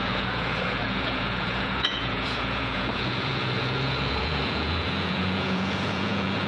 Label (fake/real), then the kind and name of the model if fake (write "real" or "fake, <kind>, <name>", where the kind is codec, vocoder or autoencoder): fake, vocoder, Vocos